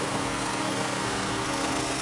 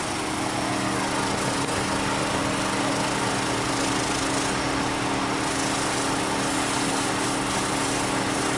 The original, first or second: second